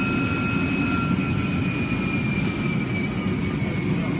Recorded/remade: recorded